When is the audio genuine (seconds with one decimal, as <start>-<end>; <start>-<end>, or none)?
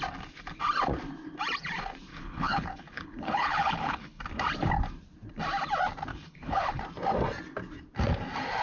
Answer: 0.0-2.1; 4.2-6.1; 6.8-8.6